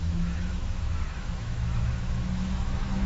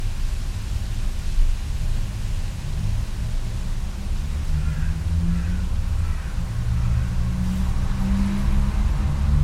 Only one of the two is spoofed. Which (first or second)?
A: first